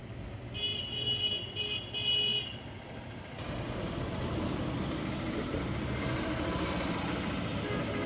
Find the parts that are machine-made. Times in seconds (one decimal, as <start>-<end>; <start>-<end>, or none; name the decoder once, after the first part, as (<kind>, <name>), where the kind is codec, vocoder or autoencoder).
none